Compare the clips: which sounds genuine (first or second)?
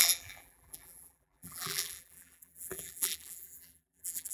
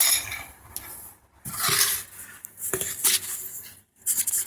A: second